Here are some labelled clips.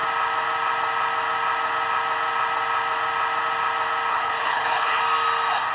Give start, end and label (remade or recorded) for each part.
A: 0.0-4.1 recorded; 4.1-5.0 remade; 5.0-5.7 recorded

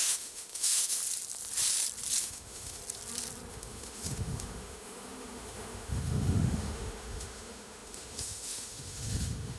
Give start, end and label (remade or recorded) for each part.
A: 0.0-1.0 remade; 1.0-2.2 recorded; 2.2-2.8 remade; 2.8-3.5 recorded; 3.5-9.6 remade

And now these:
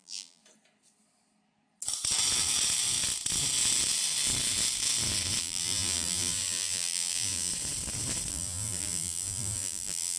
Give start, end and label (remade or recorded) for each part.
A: 0.0-0.4 remade; 0.4-5.4 recorded; 5.4-7.5 remade; 7.5-8.3 recorded; 8.3-10.2 remade